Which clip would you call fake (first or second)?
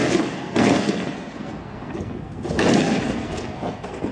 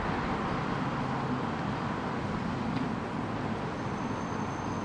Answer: first